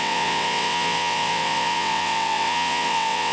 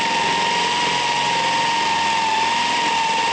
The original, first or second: second